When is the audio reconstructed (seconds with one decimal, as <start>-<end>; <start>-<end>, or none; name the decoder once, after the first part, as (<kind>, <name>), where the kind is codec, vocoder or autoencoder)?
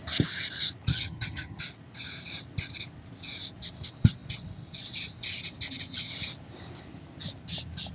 0.9-1.6 (vocoder, HiFi-GAN)